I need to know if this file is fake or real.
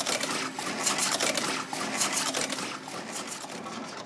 real